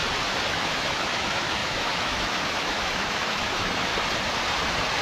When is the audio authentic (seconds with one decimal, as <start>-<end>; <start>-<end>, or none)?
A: 0.0-0.5; 3.9-5.0